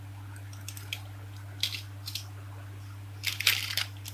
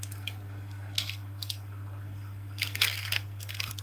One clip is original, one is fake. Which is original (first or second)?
first